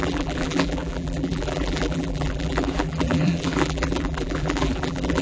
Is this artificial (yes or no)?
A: yes